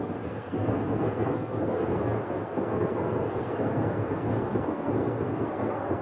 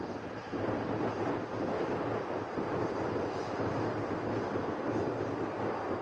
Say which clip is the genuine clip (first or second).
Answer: second